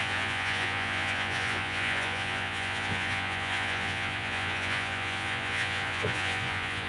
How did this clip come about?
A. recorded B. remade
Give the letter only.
B